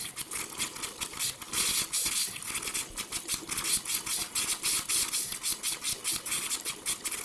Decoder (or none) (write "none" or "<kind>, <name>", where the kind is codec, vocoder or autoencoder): none